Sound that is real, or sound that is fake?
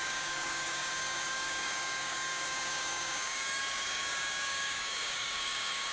fake